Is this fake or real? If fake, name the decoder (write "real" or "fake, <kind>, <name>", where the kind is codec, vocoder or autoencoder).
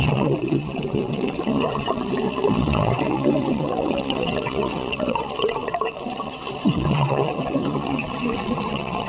fake, vocoder, WaveNeXt